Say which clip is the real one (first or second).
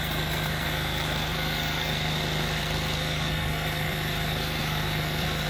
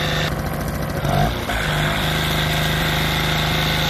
second